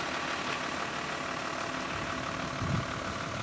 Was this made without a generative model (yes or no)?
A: yes